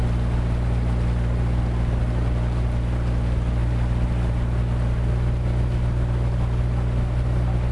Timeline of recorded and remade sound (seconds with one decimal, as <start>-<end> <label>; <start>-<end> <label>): 0.0-7.7 recorded